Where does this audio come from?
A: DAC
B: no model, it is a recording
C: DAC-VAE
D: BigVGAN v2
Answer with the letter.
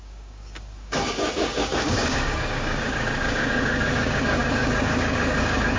A